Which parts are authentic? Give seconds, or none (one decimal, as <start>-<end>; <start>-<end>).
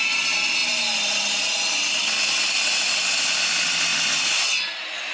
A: 0.0-5.1